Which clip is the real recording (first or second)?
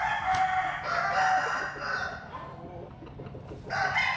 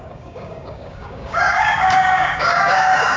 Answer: first